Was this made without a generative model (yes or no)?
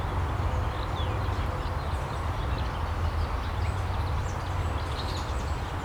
yes